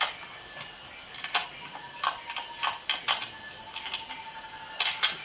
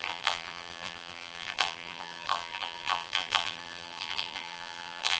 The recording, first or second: first